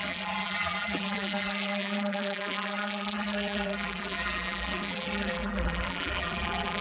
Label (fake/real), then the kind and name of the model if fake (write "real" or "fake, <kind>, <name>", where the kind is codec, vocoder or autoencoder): fake, vocoder, BigVGAN v2